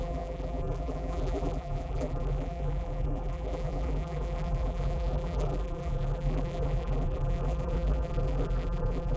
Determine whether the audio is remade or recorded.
remade